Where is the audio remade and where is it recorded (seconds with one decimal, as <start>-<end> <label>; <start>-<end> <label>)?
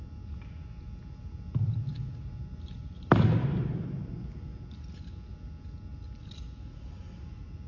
0.0-7.7 recorded